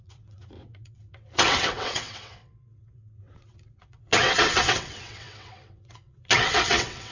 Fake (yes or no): yes